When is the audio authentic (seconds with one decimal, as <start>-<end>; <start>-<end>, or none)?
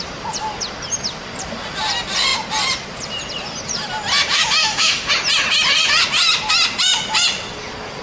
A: 0.0-4.6; 5.1-8.0